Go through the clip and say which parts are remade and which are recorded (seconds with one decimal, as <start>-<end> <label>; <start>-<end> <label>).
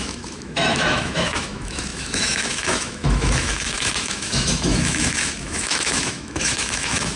0.0-7.2 remade